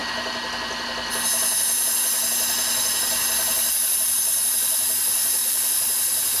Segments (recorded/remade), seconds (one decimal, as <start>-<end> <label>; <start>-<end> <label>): 0.0-6.4 recorded